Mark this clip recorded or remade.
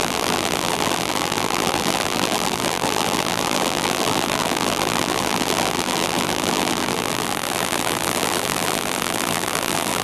remade